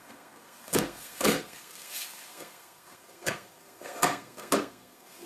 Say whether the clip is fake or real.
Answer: fake